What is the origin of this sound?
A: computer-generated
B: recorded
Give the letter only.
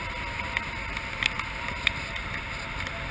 B